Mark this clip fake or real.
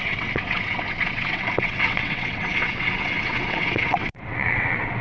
fake